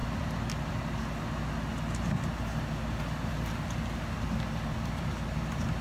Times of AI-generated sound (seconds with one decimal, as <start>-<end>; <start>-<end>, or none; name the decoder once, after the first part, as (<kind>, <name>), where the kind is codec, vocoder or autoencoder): none